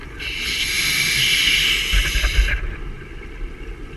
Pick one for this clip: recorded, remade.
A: recorded